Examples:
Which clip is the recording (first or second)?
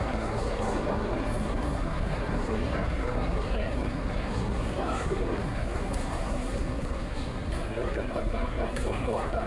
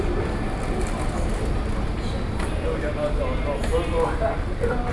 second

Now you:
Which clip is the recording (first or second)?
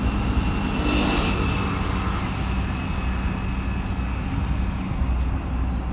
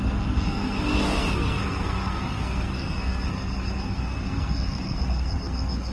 first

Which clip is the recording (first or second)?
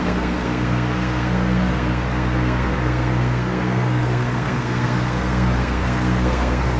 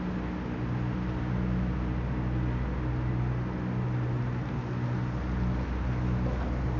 second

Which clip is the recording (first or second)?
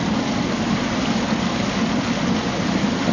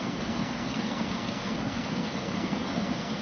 first